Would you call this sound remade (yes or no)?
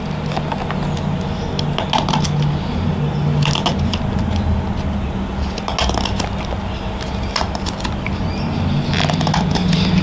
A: no